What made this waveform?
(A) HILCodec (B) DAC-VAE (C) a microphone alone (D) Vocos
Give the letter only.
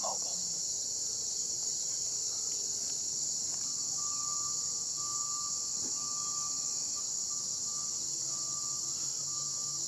C